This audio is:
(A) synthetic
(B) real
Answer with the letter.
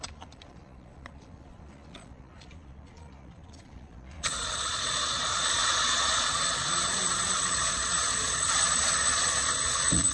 A